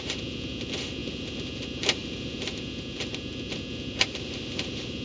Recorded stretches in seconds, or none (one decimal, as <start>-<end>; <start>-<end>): 0.0-5.0